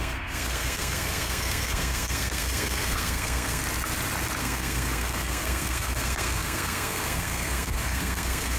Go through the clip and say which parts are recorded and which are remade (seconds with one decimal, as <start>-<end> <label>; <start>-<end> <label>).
0.0-3.6 remade; 3.6-4.4 recorded; 4.4-8.6 remade